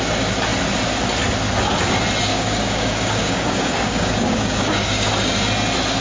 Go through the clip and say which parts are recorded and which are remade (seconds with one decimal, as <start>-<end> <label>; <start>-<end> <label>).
0.0-2.3 recorded; 2.3-5.1 remade; 5.1-6.0 recorded